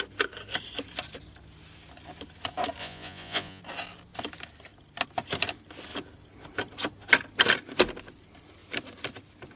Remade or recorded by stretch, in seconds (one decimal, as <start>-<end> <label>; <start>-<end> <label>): 0.0-2.8 recorded; 2.8-3.6 remade; 3.6-9.6 recorded